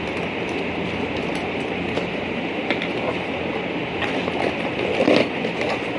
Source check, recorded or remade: recorded